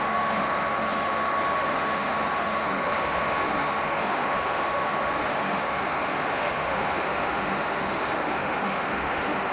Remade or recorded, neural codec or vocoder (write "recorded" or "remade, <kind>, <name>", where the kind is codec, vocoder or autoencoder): remade, autoencoder, DAC-VAE